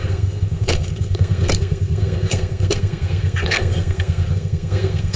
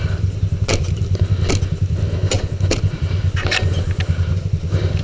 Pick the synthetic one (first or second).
first